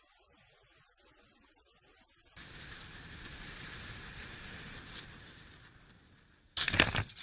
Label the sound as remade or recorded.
recorded